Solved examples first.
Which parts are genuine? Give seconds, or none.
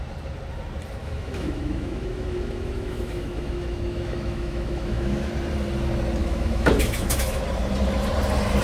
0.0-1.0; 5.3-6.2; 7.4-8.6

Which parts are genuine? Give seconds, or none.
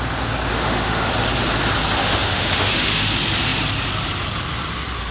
0.0-0.5; 1.1-2.0; 3.1-5.1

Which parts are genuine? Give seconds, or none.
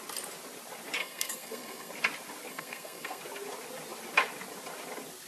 0.0-1.0; 1.9-2.5; 3.2-5.3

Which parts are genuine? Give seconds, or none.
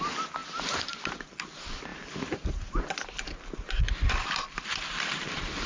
0.0-5.7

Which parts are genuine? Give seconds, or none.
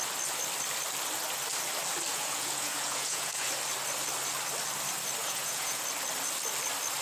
0.0-2.1; 3.5-5.2; 5.8-7.0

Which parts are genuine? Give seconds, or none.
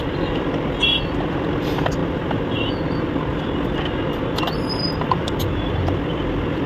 3.3-4.4